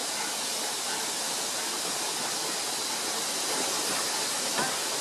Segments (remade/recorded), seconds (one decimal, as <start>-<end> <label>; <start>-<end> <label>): 0.0-1.0 remade; 1.0-5.0 recorded